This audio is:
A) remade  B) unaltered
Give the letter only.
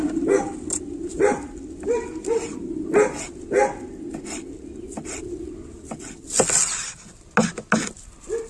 B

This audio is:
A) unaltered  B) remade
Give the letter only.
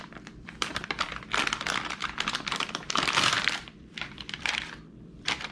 B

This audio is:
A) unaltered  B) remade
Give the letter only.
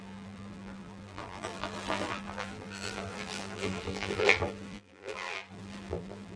B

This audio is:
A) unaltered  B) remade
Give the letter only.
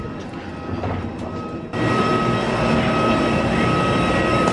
A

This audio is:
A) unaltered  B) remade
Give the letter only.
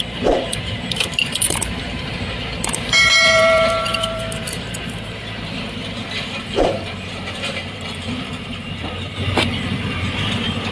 B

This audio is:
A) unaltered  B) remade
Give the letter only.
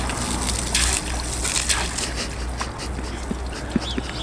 A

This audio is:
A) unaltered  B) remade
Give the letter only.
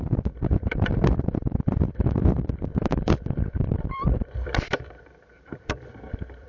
B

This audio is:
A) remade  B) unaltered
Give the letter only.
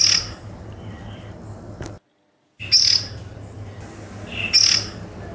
B